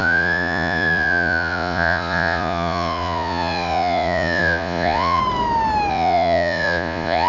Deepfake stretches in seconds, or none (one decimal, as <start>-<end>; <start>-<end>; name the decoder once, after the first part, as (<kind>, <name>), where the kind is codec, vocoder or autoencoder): 0.0-5.2 (vocoder, Vocos); 5.9-7.3